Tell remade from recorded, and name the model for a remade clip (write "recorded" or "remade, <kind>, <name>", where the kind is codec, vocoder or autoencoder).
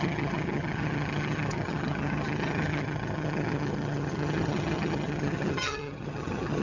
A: remade, vocoder, HiFi-GAN